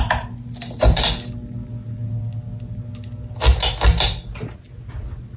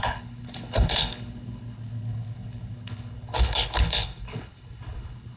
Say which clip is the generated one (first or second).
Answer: second